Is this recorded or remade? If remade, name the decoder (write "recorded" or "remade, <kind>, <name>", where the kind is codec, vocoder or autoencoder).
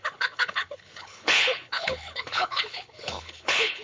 remade, codec, HILCodec